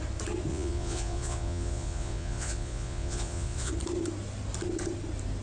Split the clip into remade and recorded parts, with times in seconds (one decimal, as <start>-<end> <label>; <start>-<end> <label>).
0.0-0.5 recorded; 0.5-3.7 remade; 3.7-5.4 recorded

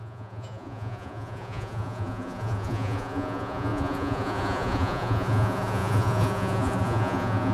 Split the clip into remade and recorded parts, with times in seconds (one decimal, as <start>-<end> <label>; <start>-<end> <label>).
0.0-7.5 remade

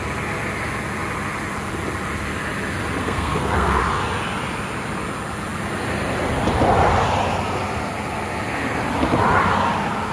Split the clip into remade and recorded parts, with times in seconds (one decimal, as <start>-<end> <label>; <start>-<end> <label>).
0.0-3.0 recorded; 3.0-3.8 remade; 3.8-10.1 recorded

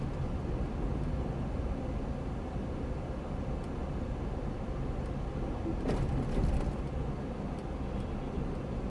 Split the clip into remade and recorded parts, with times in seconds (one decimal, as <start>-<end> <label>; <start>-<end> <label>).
0.0-8.9 recorded

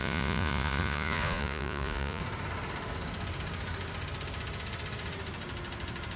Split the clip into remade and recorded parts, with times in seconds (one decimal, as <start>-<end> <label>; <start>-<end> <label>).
0.0-2.2 remade; 2.2-6.2 recorded

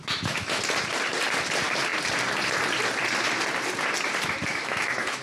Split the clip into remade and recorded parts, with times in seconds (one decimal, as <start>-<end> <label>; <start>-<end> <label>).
0.0-0.6 remade; 0.6-4.5 recorded; 4.5-5.2 remade